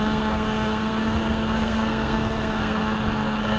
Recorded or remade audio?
remade